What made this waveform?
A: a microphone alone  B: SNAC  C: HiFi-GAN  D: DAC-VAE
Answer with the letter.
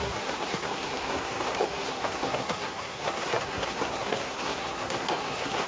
B